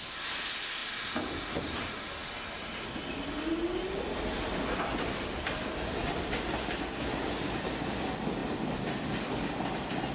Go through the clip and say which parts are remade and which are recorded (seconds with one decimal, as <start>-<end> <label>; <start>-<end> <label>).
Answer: 0.0-10.1 recorded